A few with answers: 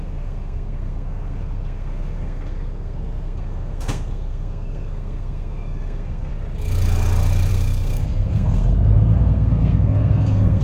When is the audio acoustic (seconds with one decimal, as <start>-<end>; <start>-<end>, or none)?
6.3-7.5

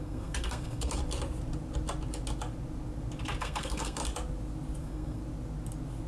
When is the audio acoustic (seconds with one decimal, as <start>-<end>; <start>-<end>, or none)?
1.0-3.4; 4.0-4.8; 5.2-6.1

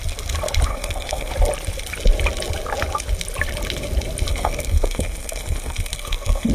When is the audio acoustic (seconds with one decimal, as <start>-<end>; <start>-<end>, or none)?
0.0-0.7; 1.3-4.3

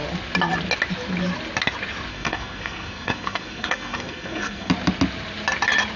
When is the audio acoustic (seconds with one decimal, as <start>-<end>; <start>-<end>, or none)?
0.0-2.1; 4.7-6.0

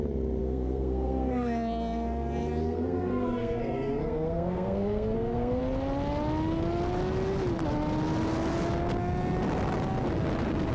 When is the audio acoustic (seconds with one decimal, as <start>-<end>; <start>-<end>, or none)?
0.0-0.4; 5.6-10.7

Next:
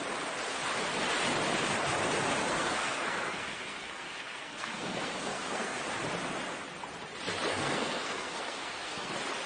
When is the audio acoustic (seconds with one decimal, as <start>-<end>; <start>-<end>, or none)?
0.0-2.4; 5.8-7.5; 9.1-9.5